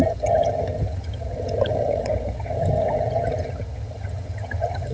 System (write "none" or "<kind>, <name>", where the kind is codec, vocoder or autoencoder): vocoder, HiFi-GAN